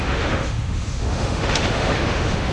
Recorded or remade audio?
remade